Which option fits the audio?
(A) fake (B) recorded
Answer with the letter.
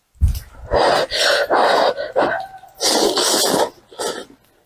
B